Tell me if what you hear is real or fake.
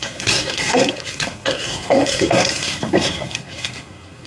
fake